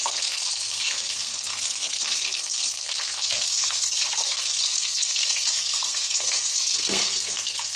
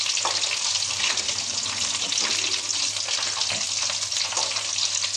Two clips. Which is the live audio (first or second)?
second